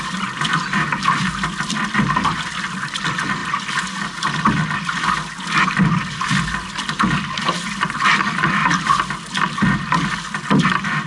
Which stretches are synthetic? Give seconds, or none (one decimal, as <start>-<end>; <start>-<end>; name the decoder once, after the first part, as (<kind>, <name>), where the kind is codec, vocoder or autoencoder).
none